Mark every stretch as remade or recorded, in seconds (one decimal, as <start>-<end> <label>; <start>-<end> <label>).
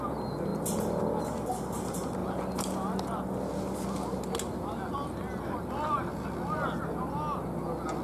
0.0-8.0 recorded